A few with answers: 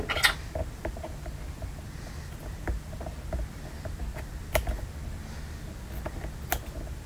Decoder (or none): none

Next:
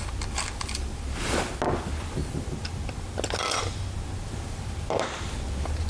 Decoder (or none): none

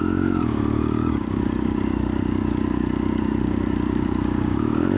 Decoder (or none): codec, DAC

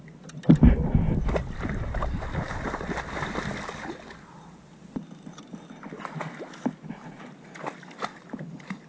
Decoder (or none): none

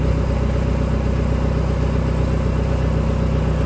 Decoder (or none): none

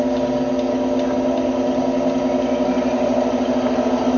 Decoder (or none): none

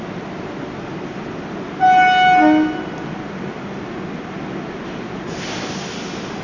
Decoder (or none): none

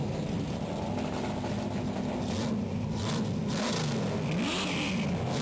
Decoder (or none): none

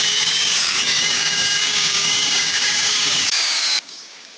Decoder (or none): codec, DAC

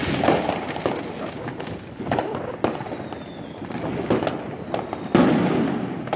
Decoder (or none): none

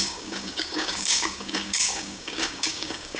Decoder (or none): codec, DAC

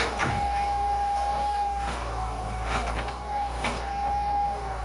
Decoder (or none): codec, DAC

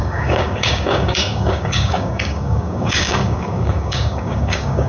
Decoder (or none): codec, DAC